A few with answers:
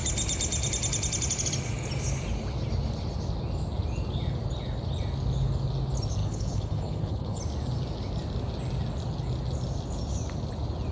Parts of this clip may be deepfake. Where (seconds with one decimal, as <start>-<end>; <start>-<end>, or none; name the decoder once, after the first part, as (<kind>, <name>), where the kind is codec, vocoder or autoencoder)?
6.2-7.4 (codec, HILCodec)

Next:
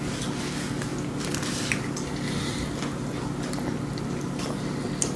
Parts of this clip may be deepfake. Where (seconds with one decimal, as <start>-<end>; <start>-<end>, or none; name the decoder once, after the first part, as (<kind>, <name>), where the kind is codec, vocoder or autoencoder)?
none

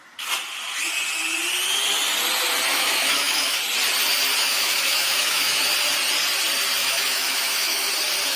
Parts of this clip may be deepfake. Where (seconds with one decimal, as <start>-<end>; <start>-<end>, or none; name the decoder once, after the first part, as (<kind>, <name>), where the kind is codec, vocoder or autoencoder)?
2.7-3.6 (autoencoder, DAC-VAE); 4.4-5.6; 6.8-7.9

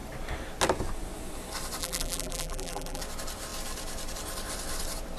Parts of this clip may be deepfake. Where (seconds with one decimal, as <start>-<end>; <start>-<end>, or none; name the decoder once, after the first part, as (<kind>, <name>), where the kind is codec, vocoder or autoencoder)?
1.8-3.0 (vocoder, BigVGAN v2)

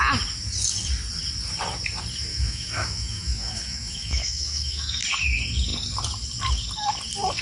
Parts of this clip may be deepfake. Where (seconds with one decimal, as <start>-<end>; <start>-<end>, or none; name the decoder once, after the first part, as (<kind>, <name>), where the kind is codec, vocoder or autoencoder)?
2.3-5.0 (autoencoder, DAC-VAE)

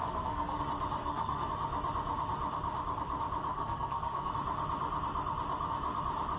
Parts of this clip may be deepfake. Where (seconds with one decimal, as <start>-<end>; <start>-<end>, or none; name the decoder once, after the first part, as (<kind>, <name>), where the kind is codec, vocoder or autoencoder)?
0.0-0.6 (codec, SNAC); 1.0-1.5; 3.5-4.3

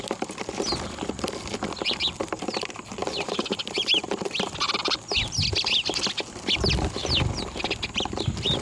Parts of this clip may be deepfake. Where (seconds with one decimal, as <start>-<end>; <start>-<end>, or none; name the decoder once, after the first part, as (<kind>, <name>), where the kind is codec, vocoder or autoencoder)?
3.0-4.9 (vocoder, BigVGAN v2); 7.0-7.6

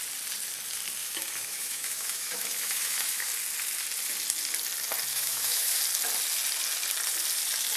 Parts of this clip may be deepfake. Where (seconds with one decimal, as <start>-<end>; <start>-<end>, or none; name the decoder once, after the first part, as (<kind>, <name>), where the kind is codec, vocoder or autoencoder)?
1.0-3.3 (autoencoder, DAC-VAE); 5.1-5.8